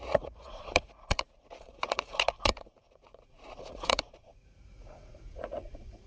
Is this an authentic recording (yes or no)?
no